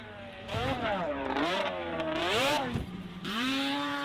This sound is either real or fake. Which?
fake